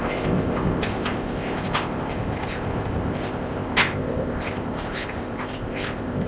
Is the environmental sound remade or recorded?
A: remade